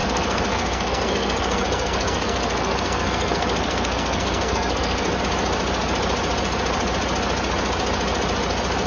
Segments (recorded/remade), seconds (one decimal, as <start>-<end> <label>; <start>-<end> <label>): 0.0-5.2 remade; 5.2-8.9 recorded